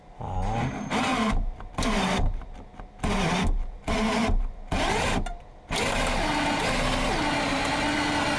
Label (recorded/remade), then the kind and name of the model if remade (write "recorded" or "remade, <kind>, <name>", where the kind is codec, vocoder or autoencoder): recorded